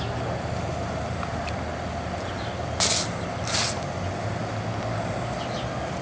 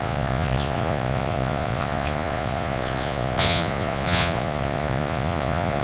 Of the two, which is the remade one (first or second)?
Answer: second